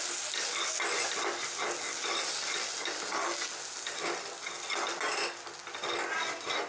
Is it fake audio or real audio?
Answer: real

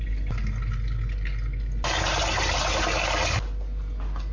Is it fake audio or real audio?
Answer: real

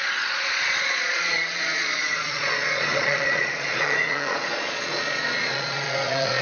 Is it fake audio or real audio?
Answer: fake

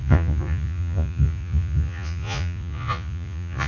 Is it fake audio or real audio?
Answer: fake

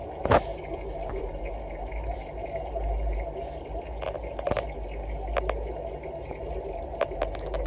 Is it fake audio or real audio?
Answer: real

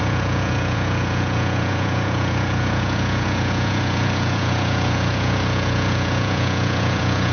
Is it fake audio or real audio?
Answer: fake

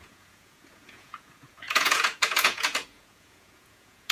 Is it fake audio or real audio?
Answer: fake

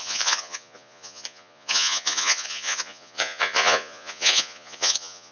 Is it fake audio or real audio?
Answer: fake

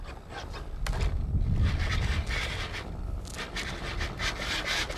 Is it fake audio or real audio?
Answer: real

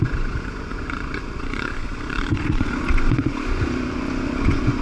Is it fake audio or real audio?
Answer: fake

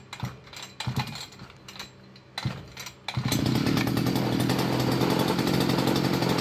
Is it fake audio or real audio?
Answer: real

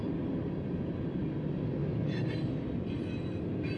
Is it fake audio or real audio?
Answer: real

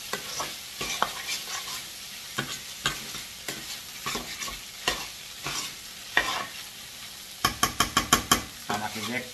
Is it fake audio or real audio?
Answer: real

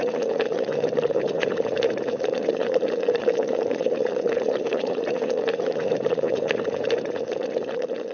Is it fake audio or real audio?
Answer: fake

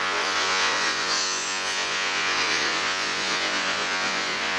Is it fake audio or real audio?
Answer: fake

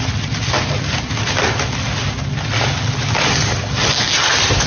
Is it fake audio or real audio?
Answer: real